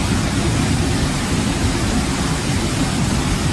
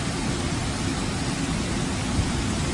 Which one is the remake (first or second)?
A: first